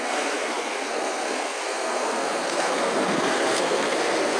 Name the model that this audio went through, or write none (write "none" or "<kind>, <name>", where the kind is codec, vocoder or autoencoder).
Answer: codec, SNAC